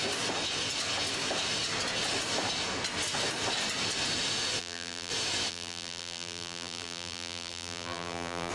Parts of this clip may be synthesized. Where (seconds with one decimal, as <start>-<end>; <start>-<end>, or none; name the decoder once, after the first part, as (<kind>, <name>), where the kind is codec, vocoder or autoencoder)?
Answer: 4.6-5.1 (vocoder, BigVGAN v2); 5.5-8.5